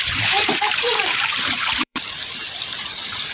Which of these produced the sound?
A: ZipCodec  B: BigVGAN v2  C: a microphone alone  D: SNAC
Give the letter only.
B